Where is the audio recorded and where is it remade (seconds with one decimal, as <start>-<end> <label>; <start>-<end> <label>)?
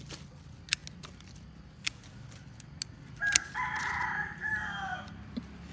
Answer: 0.0-3.8 recorded; 3.8-4.9 remade; 4.9-5.7 recorded